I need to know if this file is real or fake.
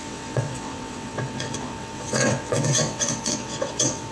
fake